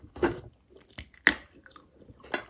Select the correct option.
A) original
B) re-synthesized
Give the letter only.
A